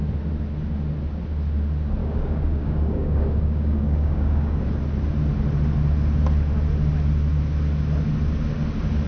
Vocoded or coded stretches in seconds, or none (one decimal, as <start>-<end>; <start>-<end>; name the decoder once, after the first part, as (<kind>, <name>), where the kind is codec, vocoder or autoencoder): 2.0-4.7 (codec, DAC)